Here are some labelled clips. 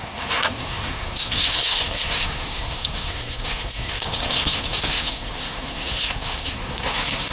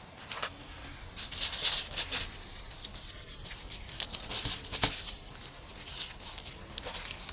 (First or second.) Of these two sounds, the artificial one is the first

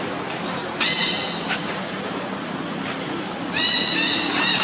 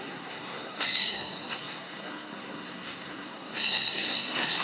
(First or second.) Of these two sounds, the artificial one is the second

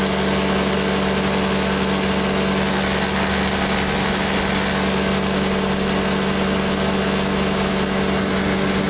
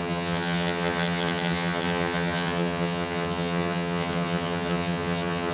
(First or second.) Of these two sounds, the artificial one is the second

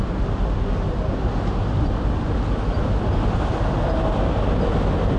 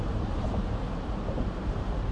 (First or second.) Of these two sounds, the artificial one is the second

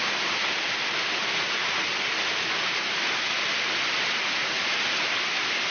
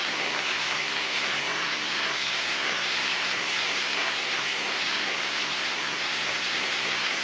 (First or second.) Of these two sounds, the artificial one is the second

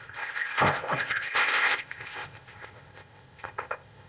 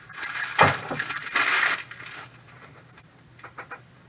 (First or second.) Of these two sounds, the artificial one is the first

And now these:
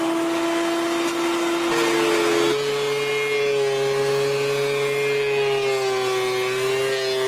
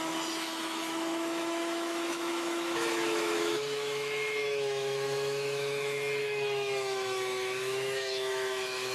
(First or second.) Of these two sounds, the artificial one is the second